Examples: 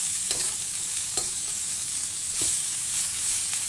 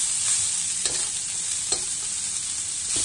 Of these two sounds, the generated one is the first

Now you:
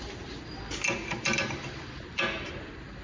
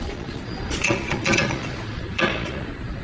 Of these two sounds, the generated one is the second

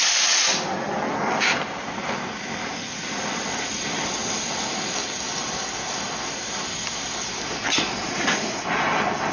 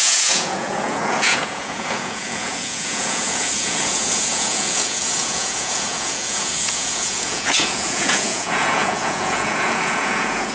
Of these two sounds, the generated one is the second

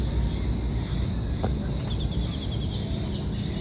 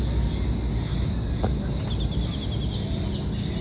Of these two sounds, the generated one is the first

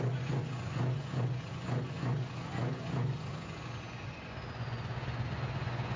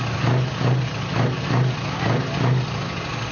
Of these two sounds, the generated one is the first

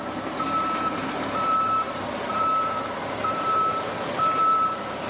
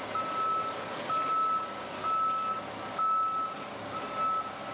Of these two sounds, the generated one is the first